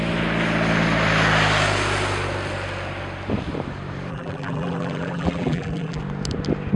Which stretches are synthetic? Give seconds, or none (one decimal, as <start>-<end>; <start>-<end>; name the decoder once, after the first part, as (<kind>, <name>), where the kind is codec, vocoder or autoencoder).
4.1-6.0 (vocoder, BigVGAN v2)